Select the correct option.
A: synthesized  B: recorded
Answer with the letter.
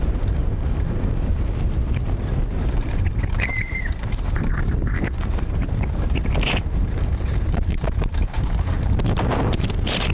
A